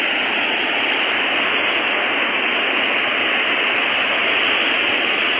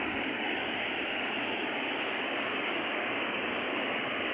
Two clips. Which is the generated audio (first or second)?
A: second